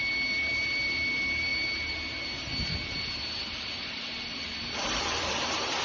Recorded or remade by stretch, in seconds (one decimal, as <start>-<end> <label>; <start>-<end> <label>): 0.0-5.8 remade